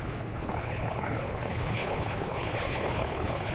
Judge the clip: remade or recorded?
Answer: remade